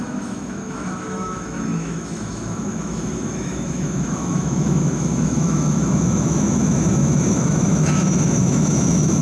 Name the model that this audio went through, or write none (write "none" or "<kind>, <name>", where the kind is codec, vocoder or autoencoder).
autoencoder, DAC-VAE